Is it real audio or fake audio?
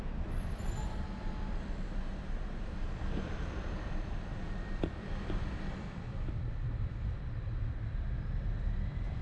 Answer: fake